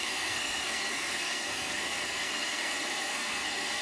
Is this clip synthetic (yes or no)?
yes